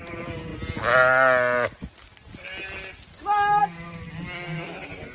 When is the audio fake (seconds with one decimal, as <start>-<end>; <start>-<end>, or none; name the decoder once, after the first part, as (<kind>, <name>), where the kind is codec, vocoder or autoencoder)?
none